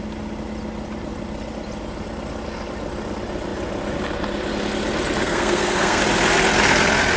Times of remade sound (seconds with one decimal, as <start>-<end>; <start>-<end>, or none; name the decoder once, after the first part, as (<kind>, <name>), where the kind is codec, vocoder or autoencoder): 5.2-6.0 (codec, SNAC)